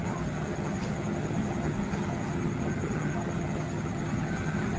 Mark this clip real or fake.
fake